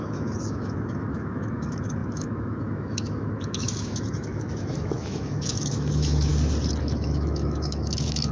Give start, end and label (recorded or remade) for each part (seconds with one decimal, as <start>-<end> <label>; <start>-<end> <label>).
0.0-6.3 remade; 6.3-6.8 recorded; 6.8-8.3 remade

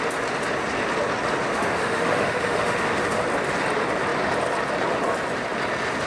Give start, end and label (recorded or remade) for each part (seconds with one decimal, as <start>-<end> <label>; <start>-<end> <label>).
0.0-1.5 recorded; 1.5-3.2 remade; 3.2-6.1 recorded

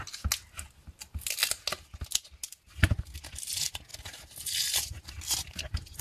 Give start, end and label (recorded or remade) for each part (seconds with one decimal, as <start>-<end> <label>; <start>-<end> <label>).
0.0-6.0 recorded